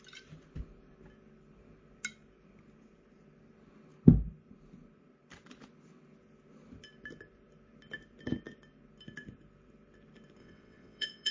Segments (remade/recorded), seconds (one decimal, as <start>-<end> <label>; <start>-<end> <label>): 0.0-10.4 recorded; 10.4-11.3 remade